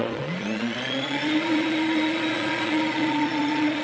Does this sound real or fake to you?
fake